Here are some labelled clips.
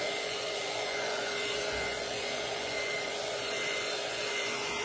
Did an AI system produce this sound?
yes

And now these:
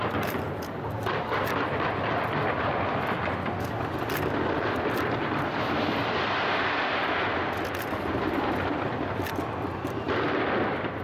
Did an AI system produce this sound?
no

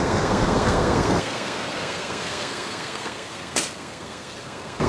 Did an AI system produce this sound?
yes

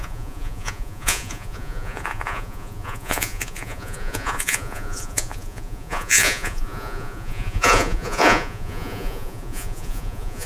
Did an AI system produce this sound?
yes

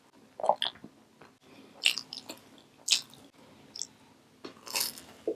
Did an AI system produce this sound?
no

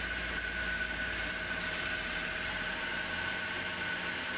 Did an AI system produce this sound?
yes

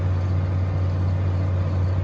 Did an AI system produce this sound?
no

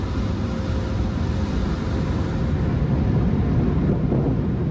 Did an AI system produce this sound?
no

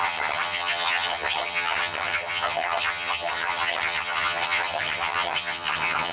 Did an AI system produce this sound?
yes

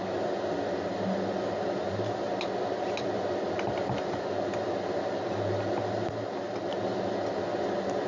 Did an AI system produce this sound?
no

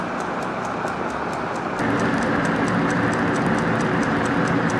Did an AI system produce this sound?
no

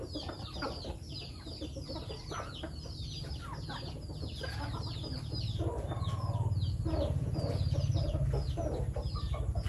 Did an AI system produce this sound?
no